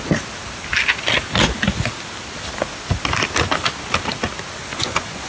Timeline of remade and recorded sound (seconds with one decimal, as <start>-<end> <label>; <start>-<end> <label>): 0.0-4.6 recorded; 4.6-5.3 remade